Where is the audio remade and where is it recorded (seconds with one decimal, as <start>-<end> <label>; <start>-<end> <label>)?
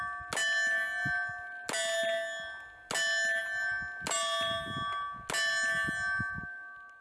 0.0-7.0 recorded